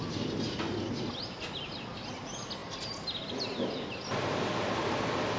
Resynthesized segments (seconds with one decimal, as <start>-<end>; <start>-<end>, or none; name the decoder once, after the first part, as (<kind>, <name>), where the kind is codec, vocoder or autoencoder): none